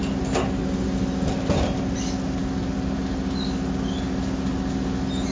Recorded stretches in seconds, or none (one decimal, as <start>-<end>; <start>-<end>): 0.0-5.3